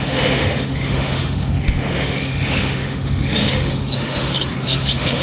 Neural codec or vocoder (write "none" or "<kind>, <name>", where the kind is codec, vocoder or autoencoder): autoencoder, DAC-VAE